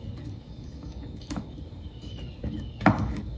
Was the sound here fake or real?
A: fake